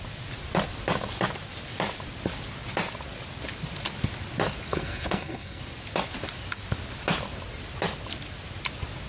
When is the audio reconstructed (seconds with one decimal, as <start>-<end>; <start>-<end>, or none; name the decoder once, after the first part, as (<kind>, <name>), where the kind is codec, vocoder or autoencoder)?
4.7-5.6 (codec, SNAC)